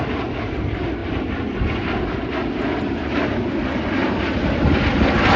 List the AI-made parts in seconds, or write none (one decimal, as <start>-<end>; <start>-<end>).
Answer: none